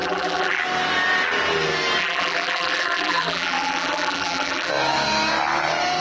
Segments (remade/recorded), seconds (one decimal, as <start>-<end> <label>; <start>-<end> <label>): 0.0-0.6 remade; 0.6-2.0 recorded; 2.0-4.7 remade; 4.7-6.0 recorded

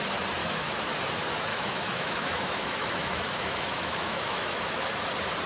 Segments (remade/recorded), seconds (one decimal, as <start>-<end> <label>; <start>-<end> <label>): 0.0-0.4 recorded; 0.4-0.9 remade; 0.9-1.5 recorded; 1.5-4.7 remade; 4.7-5.5 recorded

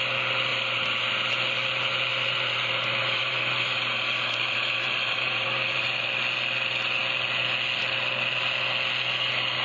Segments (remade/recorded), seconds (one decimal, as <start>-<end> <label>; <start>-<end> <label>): 0.0-0.5 recorded; 0.5-1.3 remade; 1.3-2.1 recorded; 2.1-6.1 remade; 6.1-9.6 recorded

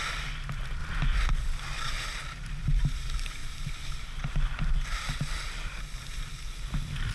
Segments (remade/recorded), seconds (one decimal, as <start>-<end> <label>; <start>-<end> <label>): 0.0-0.8 remade; 0.8-1.3 recorded; 1.3-3.4 remade; 3.4-6.4 recorded; 6.4-7.1 remade

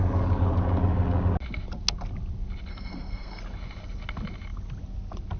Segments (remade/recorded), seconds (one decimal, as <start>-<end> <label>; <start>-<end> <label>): 0.0-2.7 recorded; 2.7-3.4 remade; 3.4-5.4 recorded

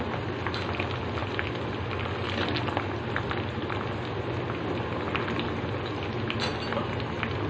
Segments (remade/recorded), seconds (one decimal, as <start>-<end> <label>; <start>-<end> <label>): 0.0-7.5 recorded